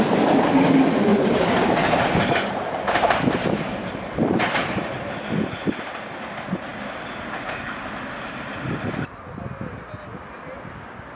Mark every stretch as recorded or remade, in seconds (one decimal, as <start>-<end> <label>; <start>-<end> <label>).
0.0-1.1 recorded; 1.1-3.4 remade; 3.4-11.2 recorded